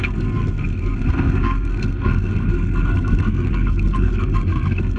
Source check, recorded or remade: remade